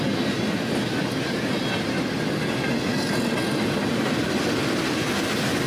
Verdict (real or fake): real